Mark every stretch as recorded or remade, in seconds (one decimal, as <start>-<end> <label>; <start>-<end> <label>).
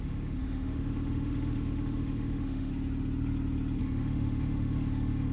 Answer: 0.0-2.7 remade; 2.7-3.8 recorded; 3.8-5.3 remade